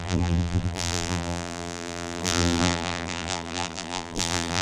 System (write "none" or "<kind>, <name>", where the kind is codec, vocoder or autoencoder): vocoder, BigVGAN v2